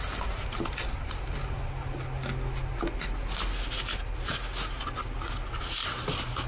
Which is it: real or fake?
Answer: real